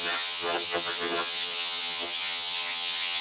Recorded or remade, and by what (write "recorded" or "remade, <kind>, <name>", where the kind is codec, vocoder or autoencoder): remade, vocoder, HiFi-GAN